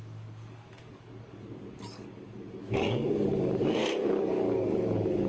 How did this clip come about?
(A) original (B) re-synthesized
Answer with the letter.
B